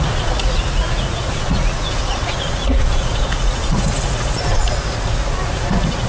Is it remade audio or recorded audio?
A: remade